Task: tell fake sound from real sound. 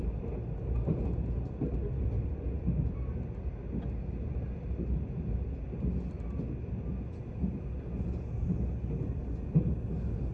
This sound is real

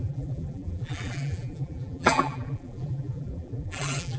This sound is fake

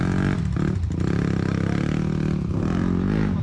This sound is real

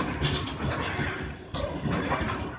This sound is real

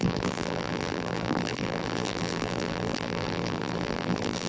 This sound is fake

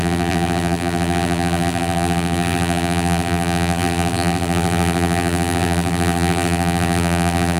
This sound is fake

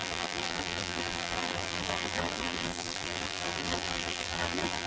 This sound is fake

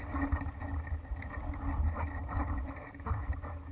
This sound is real